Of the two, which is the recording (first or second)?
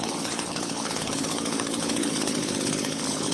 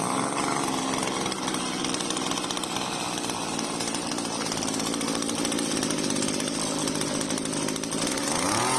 second